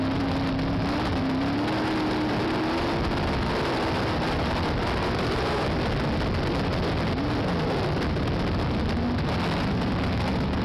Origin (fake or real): real